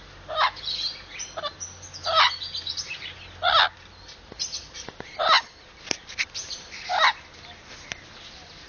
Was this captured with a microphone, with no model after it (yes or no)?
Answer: yes